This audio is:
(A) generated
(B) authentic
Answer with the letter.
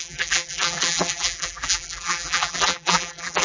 A